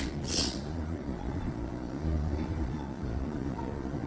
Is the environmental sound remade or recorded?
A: remade